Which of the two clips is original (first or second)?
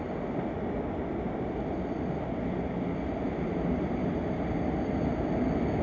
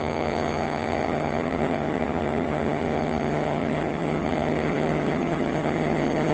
first